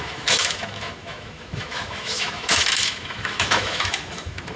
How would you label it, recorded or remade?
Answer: remade